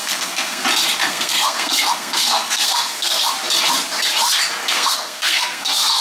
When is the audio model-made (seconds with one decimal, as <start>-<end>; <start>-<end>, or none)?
0.0-0.6; 1.0-3.3; 4.6-6.0